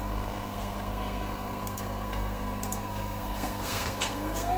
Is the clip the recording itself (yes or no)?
no